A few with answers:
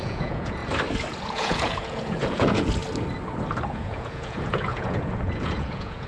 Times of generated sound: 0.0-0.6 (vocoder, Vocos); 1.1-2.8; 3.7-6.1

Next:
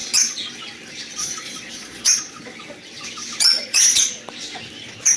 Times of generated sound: 1.2-2.4 (vocoder, Vocos); 3.6-4.2

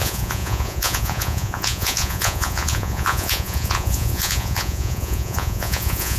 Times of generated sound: 0.0-6.2 (vocoder, Vocos)

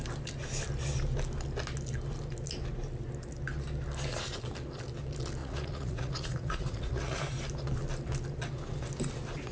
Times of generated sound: 5.4-7.2 (vocoder, Vocos)

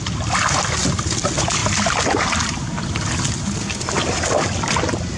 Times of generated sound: none

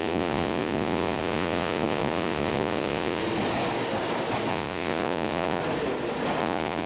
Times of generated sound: 0.0-3.2 (vocoder, Vocos); 4.5-5.6; 6.4-6.9

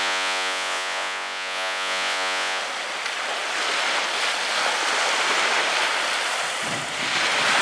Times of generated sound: 0.0-2.6 (vocoder, Vocos)